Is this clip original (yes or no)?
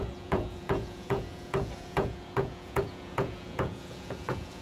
no